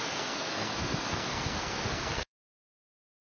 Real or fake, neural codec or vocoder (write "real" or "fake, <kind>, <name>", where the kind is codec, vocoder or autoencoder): fake, codec, SNAC